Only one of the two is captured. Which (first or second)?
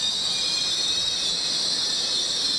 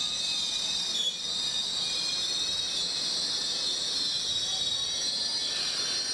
second